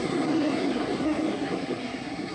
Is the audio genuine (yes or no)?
no